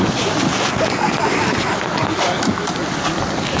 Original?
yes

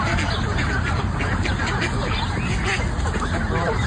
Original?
yes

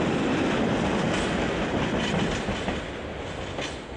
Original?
yes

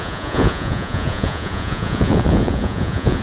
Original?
no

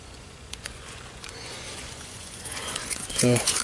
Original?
no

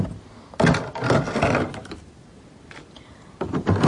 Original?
yes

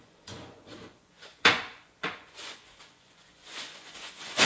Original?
no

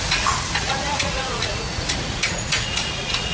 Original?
no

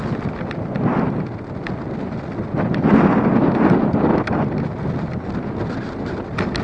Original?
yes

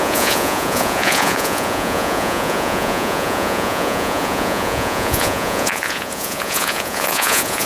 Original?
no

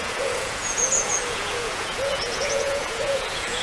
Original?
no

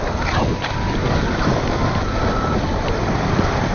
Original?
yes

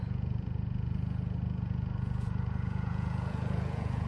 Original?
no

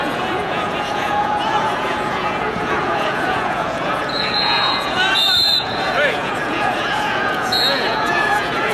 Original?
no